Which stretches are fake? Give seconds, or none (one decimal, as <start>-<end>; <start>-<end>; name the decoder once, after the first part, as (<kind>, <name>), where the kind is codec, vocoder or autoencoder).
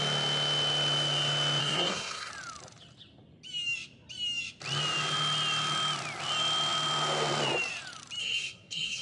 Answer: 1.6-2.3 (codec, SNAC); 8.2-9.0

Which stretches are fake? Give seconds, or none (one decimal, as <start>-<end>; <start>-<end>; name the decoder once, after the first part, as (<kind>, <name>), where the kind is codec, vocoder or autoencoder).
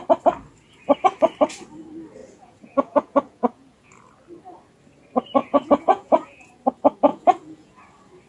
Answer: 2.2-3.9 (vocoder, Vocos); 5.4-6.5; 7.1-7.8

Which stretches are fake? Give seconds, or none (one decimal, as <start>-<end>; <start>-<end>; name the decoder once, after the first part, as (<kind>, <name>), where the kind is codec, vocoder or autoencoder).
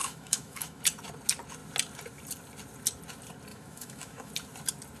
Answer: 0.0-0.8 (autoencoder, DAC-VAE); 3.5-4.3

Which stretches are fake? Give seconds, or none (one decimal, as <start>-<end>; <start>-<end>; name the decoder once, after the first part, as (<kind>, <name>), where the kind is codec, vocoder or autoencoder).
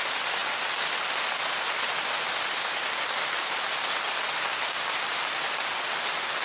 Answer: none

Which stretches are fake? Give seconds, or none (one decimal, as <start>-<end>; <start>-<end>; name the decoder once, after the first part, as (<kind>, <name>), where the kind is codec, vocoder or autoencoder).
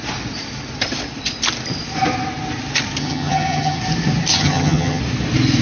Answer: 3.0-3.8 (vocoder, HiFi-GAN); 4.3-5.0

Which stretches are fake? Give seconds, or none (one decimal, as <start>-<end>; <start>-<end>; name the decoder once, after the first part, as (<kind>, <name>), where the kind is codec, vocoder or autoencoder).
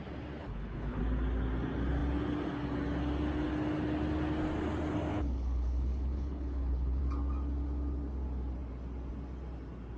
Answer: 0.4-1.0 (codec, HILCodec); 5.1-7.0